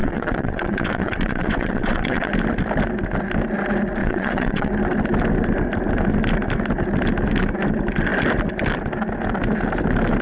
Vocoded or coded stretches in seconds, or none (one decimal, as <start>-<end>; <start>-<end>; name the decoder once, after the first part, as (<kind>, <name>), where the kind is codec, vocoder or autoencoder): 0.0-2.3 (vocoder, WaveNeXt); 4.0-4.7